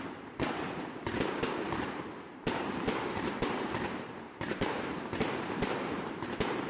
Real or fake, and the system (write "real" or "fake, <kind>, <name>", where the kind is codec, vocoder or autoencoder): fake, vocoder, BigVGAN v2